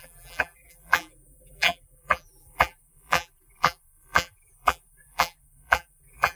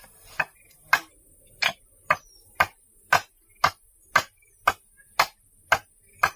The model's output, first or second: first